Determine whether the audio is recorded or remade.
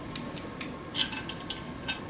recorded